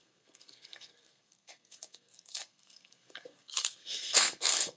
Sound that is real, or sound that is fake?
fake